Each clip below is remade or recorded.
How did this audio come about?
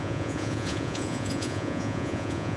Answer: remade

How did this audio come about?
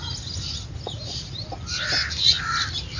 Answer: recorded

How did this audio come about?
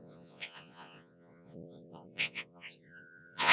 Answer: remade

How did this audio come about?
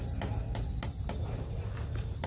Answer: recorded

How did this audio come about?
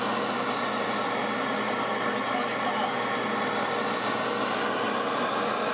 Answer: recorded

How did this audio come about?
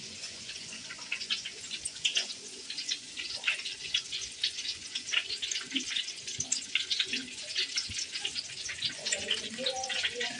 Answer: remade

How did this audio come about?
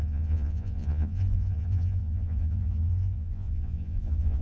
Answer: remade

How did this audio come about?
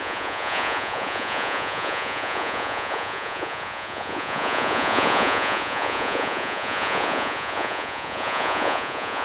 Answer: remade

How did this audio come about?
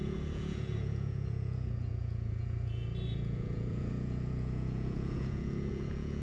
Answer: remade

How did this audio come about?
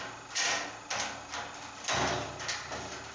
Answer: recorded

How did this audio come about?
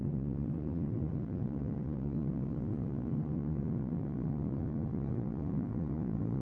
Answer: remade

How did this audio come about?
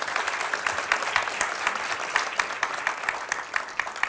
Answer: recorded